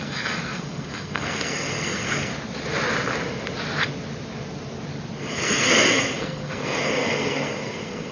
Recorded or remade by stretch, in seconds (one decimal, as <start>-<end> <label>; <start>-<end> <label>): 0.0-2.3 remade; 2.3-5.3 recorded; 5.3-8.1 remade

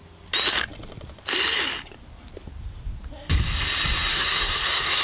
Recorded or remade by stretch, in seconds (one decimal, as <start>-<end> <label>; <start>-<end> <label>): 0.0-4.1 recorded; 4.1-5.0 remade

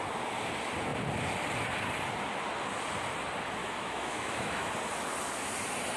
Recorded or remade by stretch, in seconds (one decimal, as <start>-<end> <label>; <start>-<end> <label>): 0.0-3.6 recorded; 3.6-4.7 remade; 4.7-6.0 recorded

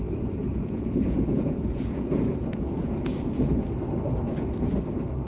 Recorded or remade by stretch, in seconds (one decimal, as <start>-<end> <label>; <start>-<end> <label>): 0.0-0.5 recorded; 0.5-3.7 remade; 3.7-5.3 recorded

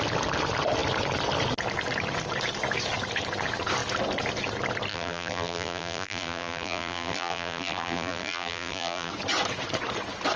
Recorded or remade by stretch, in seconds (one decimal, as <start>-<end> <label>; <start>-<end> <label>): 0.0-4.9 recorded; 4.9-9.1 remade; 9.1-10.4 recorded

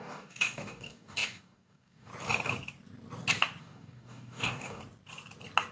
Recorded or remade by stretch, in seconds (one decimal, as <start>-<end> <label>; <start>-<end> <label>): 0.0-2.1 remade; 2.1-3.6 recorded; 3.6-4.8 remade; 4.8-5.7 recorded

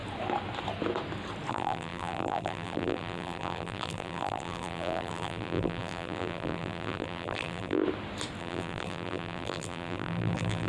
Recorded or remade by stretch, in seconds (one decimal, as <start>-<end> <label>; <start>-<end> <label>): 0.0-1.5 recorded; 1.5-7.8 remade; 7.8-8.4 recorded; 8.4-10.7 remade

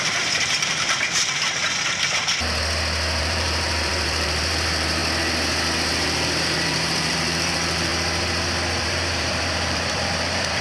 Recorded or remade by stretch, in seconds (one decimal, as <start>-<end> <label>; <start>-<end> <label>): 0.0-1.6 remade; 1.6-3.2 recorded; 3.2-5.0 remade; 5.0-5.9 recorded; 5.9-7.9 remade; 7.9-8.8 recorded; 8.8-10.6 remade